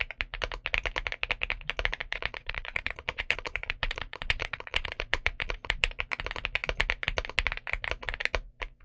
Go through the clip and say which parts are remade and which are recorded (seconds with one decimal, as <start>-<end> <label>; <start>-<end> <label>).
0.0-2.0 recorded; 2.0-5.9 remade; 5.9-8.8 recorded